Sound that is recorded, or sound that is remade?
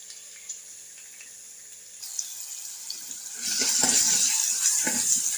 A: recorded